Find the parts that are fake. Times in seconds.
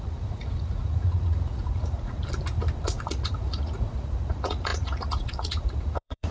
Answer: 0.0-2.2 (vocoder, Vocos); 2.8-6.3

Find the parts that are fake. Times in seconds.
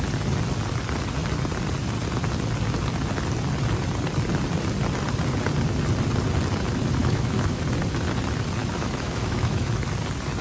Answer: 7.0-7.6 (autoencoder, DAC-VAE); 8.6-9.7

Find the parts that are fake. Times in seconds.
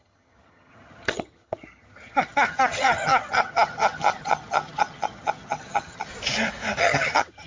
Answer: 0.0-6.1 (vocoder, HiFi-GAN); 6.8-7.5